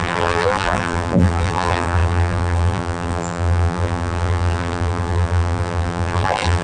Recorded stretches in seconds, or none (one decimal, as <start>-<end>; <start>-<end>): none

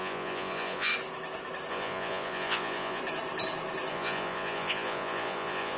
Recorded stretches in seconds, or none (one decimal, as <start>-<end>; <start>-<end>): 0.9-1.7; 3.0-3.9

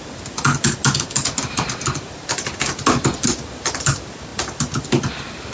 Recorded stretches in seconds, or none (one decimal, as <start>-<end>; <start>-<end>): 0.0-5.5

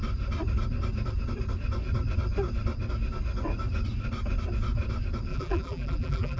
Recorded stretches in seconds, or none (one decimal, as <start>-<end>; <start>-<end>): 0.0-5.3

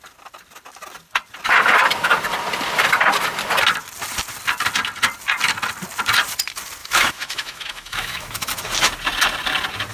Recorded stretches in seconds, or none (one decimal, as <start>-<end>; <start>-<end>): 0.0-6.8; 8.5-9.9